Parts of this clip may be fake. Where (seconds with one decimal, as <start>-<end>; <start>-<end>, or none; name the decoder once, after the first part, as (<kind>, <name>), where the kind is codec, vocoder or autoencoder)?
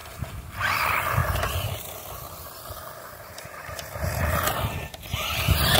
none